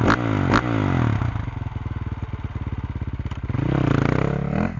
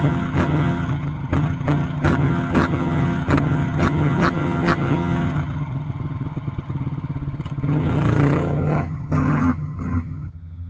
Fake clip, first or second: second